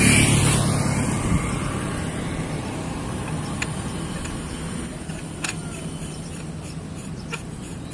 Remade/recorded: recorded